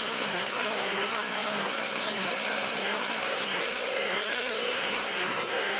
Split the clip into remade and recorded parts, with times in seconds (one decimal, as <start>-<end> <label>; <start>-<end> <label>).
0.0-5.8 remade